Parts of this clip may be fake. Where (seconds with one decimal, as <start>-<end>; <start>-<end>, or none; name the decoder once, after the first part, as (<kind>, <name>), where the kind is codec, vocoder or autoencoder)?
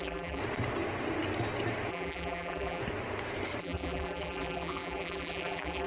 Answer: 0.0-0.4 (vocoder, BigVGAN v2); 1.9-2.8; 3.6-5.9